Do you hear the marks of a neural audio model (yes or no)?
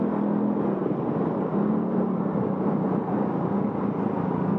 no